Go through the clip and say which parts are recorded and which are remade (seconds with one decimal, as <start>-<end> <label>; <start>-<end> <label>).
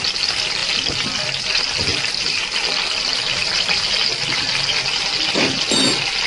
0.0-6.3 recorded